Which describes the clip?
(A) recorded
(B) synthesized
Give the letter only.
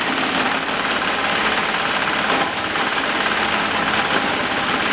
A